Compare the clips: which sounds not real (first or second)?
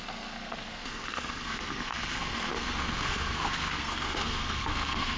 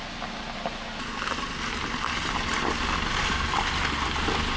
first